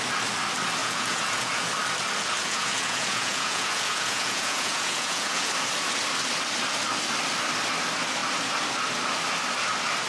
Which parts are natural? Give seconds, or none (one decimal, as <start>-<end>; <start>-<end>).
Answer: 0.0-0.8; 1.7-2.4; 5.5-10.1